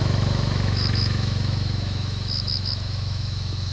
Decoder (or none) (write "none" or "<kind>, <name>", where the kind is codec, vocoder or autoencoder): autoencoder, DAC-VAE